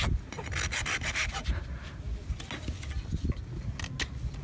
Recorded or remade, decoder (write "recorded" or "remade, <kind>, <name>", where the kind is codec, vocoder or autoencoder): recorded